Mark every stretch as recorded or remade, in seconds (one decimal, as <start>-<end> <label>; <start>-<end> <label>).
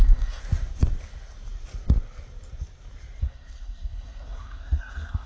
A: 0.0-0.4 remade; 0.4-3.2 recorded; 3.2-5.3 remade